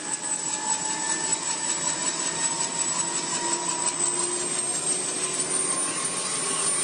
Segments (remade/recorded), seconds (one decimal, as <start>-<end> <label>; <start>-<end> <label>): 0.0-6.8 recorded